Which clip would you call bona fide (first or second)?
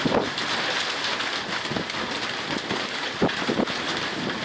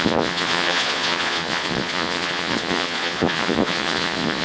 first